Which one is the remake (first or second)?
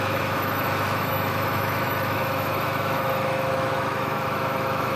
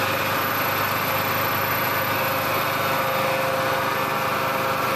first